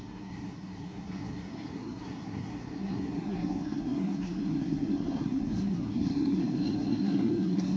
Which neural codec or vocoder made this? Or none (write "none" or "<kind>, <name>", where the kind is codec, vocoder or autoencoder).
codec, SNAC